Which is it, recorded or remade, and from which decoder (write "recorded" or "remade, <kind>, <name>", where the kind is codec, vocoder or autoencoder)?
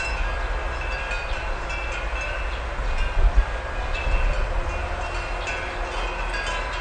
recorded